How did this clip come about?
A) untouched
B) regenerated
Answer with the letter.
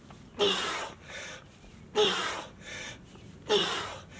A